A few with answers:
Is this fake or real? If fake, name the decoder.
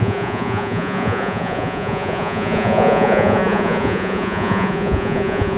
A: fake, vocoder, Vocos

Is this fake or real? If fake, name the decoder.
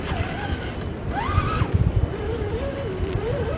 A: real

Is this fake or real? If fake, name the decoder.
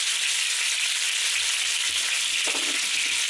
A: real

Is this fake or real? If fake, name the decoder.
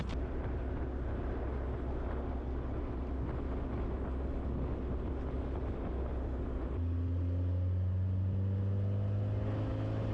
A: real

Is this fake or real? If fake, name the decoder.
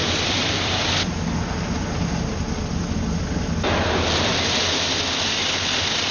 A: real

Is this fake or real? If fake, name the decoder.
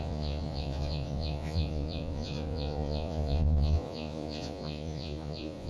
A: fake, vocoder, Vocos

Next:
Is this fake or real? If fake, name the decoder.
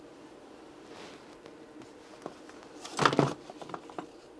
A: real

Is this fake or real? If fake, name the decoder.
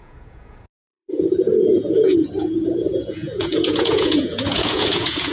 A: fake, vocoder, Vocos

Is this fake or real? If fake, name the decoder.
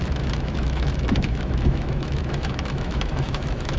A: fake, autoencoder, DAC-VAE